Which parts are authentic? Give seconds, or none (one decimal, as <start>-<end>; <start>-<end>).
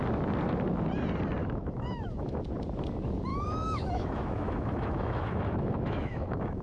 0.0-1.4; 2.4-3.3